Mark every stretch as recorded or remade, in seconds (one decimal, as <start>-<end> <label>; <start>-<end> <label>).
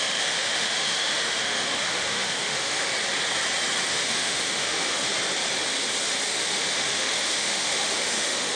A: 0.0-2.9 remade; 2.9-3.9 recorded; 3.9-5.1 remade; 5.1-6.3 recorded; 6.3-8.6 remade